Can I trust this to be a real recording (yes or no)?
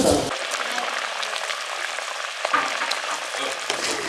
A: yes